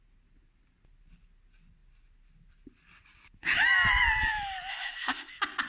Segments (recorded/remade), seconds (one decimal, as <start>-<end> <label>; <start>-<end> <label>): 0.0-4.7 recorded; 4.7-5.3 remade; 5.3-5.7 recorded